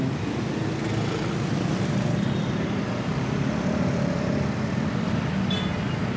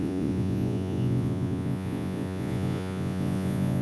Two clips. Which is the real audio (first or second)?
first